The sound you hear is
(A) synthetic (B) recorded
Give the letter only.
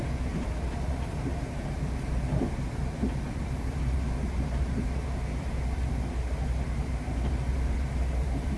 A